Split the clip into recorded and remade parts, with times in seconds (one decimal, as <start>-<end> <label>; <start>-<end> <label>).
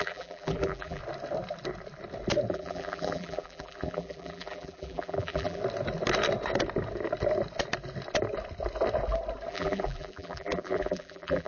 0.0-1.0 remade; 1.0-2.5 recorded; 2.5-5.6 remade; 5.6-9.5 recorded; 9.5-11.5 remade